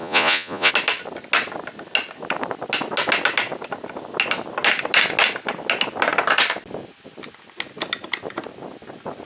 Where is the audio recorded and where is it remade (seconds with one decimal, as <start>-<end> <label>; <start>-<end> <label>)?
0.0-0.7 remade; 0.7-9.3 recorded